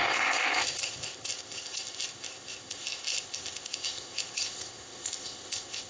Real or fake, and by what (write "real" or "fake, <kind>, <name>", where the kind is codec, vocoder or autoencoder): fake, codec, ZipCodec